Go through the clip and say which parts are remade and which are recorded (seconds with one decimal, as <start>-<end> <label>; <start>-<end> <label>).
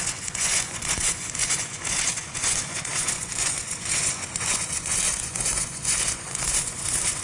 0.0-7.2 remade